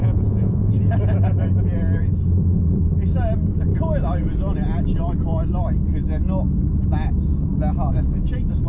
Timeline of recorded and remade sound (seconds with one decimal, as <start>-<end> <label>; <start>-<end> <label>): 0.0-0.7 remade; 0.7-8.7 recorded